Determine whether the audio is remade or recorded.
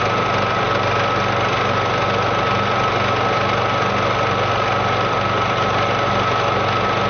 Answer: recorded